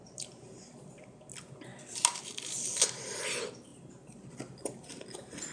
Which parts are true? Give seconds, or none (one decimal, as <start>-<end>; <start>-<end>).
0.0-5.5